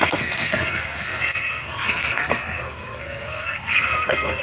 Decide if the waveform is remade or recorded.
remade